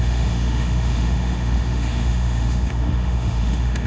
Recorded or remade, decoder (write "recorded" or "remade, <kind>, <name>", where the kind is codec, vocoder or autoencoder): remade, autoencoder, DAC-VAE